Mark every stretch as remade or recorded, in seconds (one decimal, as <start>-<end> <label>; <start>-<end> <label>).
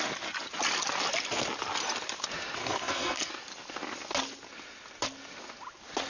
0.0-2.6 recorded; 2.6-3.3 remade; 3.3-6.1 recorded